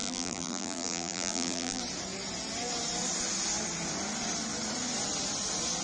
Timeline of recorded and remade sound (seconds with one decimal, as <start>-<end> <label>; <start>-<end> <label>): 0.0-1.8 remade; 1.8-5.8 recorded